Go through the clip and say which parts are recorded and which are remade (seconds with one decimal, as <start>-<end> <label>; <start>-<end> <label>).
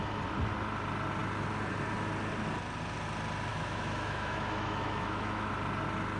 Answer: 0.0-3.5 recorded; 3.5-5.5 remade; 5.5-6.2 recorded